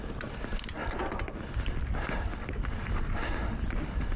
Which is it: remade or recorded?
recorded